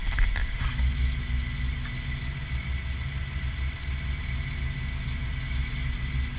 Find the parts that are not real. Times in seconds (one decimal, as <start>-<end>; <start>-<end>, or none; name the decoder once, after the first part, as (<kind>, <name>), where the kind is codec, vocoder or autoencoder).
none